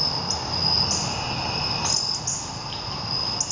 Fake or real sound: real